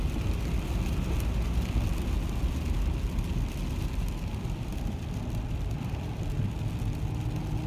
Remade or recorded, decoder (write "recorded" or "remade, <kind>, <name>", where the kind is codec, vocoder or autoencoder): recorded